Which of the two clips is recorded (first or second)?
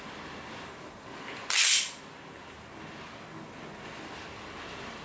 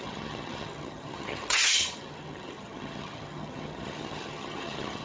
first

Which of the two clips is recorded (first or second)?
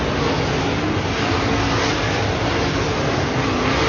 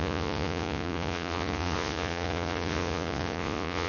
first